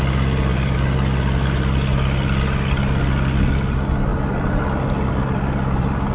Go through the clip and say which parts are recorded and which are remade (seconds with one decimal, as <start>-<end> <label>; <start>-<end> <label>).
0.0-6.1 recorded